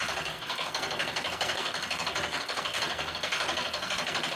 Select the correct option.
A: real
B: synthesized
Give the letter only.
B